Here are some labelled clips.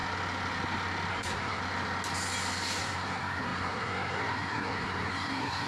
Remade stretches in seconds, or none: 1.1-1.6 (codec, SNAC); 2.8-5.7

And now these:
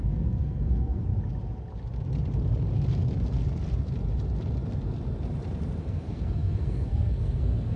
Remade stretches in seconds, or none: 0.0-1.1 (codec, SNAC); 5.8-7.8

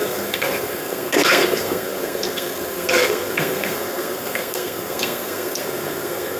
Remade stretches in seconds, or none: 0.0-6.4 (codec, SNAC)

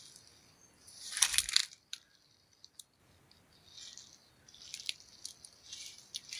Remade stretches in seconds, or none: 1.6-3.0 (vocoder, BigVGAN v2); 4.2-5.1

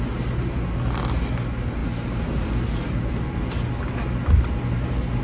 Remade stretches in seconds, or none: none

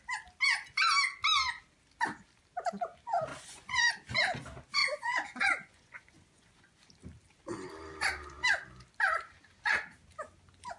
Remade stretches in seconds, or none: 3.3-3.9 (vocoder, Vocos); 4.8-6.9

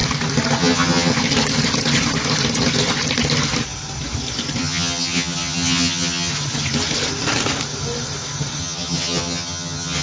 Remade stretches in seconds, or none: 0.6-1.1 (vocoder, HiFi-GAN); 4.6-6.3; 8.6-10.0